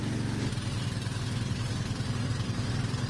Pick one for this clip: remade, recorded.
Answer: recorded